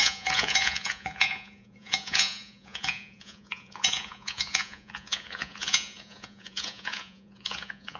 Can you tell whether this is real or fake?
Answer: fake